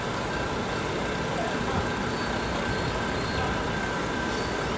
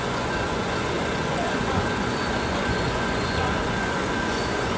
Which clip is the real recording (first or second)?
first